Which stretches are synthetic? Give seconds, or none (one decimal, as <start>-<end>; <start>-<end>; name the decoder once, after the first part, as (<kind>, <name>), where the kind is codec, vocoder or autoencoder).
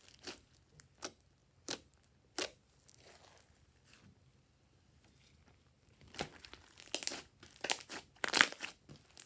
none